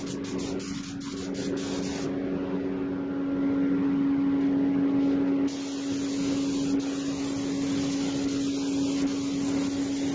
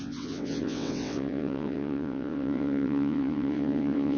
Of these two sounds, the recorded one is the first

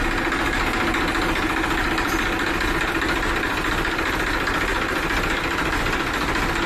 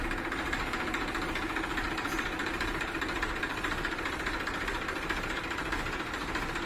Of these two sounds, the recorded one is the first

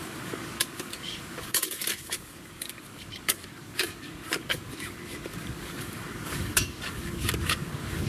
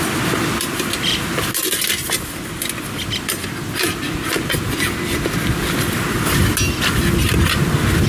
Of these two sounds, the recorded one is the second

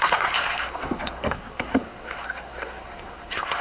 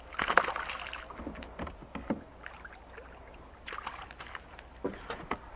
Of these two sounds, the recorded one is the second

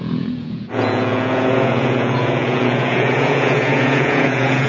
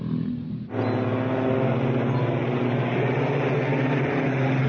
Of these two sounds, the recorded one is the second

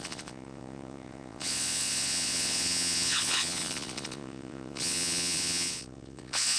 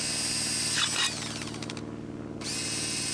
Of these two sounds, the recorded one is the second